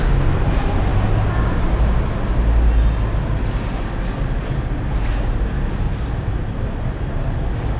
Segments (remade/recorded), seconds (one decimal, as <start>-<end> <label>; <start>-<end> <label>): 0.0-7.8 recorded